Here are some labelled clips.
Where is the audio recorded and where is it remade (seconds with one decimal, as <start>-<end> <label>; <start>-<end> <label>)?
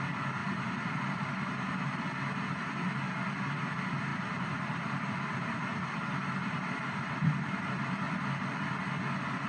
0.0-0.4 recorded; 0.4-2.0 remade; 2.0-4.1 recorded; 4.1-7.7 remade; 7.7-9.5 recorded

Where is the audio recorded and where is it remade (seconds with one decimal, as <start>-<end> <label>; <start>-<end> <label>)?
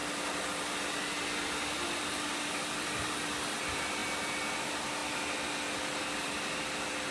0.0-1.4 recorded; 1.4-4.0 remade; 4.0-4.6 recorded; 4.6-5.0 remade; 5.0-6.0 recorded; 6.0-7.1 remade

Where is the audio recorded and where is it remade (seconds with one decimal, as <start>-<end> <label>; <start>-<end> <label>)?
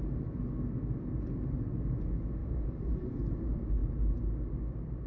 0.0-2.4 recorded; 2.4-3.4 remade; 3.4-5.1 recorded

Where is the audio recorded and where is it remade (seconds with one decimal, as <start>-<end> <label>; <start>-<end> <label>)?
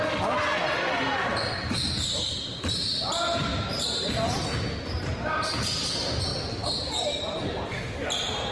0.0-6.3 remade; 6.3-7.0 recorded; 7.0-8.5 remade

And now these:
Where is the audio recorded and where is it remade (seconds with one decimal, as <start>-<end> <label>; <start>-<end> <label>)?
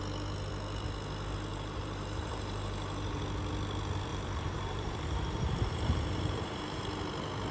0.0-1.5 recorded; 1.5-3.2 remade; 3.2-4.1 recorded; 4.1-6.8 remade; 6.8-7.5 recorded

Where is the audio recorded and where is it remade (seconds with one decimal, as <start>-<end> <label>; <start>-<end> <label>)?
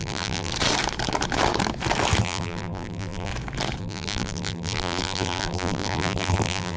0.0-0.5 remade; 0.5-2.2 recorded; 2.2-3.3 remade; 3.3-3.8 recorded; 3.8-6.8 remade